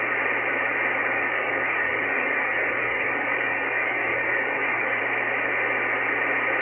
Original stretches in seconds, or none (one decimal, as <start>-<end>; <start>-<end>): 0.0-1.0; 5.0-6.6